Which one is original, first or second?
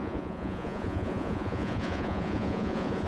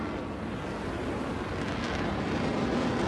second